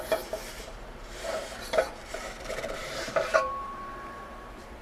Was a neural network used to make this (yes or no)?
yes